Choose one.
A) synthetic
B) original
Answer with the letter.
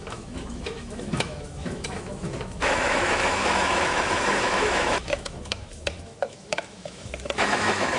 A